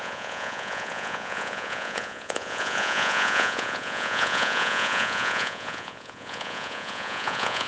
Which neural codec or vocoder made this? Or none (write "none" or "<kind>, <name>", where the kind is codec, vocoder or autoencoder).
vocoder, Vocos